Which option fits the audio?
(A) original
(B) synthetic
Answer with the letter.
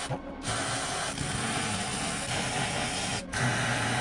A